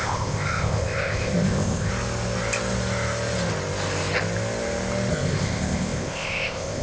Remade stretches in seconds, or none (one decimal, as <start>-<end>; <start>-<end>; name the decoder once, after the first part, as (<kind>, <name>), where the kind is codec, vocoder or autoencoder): 0.0-1.9 (codec, ZipCodec); 5.1-6.8